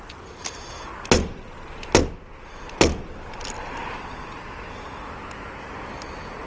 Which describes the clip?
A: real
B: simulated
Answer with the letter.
A